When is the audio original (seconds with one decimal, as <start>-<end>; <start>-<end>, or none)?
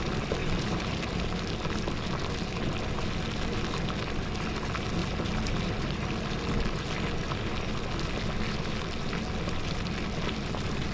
0.0-0.4; 1.4-5.0; 6.9-10.9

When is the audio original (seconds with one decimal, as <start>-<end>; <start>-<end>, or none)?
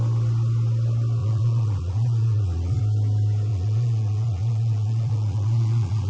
0.0-1.2; 2.8-3.5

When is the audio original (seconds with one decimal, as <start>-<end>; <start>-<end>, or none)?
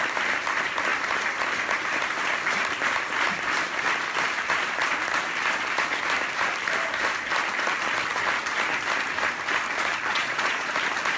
0.0-10.1; 10.7-11.2